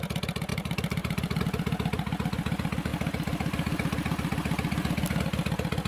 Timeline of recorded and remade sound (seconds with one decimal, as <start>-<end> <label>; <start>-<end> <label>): 0.0-0.5 recorded; 0.5-1.4 remade; 1.4-5.9 recorded

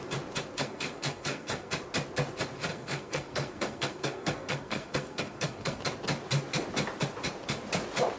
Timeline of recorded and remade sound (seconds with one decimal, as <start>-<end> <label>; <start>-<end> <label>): 0.0-0.6 recorded; 0.6-1.7 remade; 1.7-2.7 recorded; 2.7-5.8 remade; 5.8-8.2 recorded

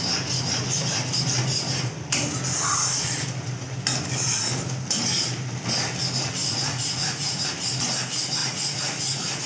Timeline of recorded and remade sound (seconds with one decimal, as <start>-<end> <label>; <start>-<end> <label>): 0.0-6.4 recorded; 6.4-7.5 remade; 7.5-8.4 recorded; 8.4-9.5 remade

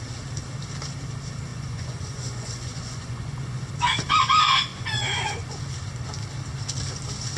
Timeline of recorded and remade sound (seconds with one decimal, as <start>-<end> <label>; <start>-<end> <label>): 0.0-1.5 recorded; 1.5-3.7 remade; 3.7-4.7 recorded; 4.7-5.6 remade; 5.6-7.4 recorded

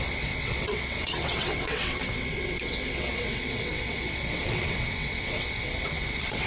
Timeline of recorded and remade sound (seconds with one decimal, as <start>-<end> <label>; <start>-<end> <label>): 0.0-6.5 remade

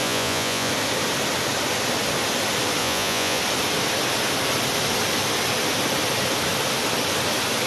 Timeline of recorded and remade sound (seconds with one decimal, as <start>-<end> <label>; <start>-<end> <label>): 0.0-0.7 remade; 0.7-2.8 recorded; 2.8-3.4 remade; 3.4-7.7 recorded

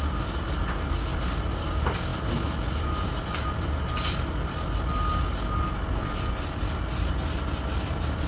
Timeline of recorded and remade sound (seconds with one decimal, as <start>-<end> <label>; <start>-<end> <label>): 0.0-8.3 recorded